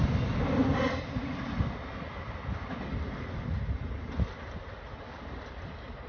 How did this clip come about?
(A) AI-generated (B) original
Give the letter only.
B